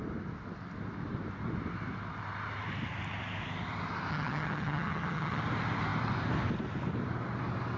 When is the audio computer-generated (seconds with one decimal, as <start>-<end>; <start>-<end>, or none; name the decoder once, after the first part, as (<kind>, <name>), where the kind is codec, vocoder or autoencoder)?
4.1-5.4 (vocoder, HiFi-GAN)